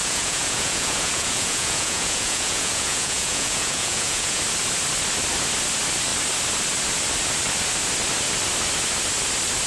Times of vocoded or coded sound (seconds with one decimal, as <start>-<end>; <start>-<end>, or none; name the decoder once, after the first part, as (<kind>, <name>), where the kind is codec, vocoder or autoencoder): 0.0-4.4 (vocoder, Vocos)